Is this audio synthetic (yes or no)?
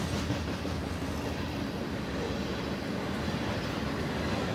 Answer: no